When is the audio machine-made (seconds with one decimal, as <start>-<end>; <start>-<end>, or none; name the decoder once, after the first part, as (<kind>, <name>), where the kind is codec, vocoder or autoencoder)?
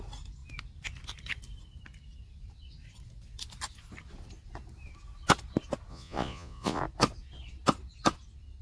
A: 5.9-6.8 (vocoder, Vocos)